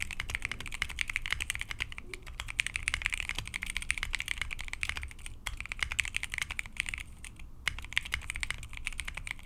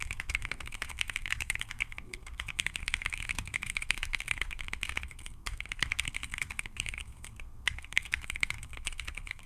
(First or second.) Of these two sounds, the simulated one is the second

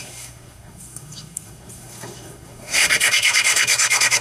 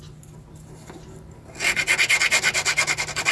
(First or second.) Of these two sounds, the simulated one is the first